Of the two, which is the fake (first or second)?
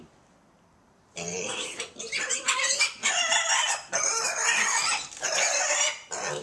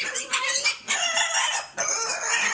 first